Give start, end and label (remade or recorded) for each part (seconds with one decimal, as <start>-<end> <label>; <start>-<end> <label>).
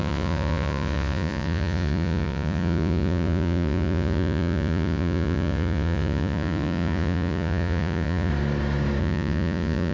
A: 0.0-8.3 remade; 8.3-9.0 recorded; 9.0-9.9 remade